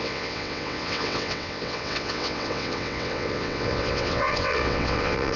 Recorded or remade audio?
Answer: remade